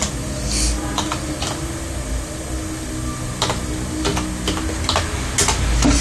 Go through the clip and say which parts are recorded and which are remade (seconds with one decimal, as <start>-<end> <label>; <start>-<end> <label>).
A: 0.0-6.0 recorded